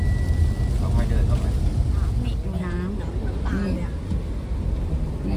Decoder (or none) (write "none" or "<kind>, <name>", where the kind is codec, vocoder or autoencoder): none